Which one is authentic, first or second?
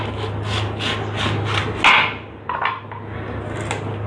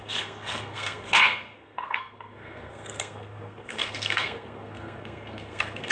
first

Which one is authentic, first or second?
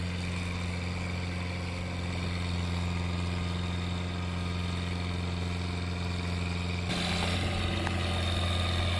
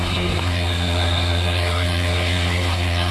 first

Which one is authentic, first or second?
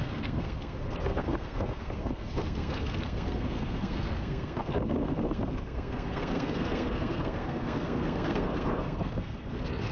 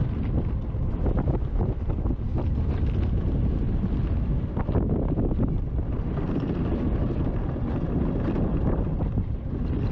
second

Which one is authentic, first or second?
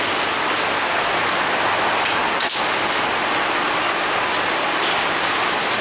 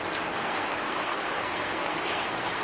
first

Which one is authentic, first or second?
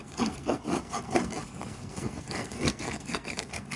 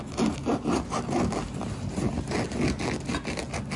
second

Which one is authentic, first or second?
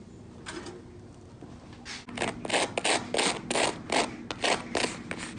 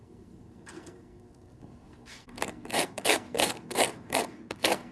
first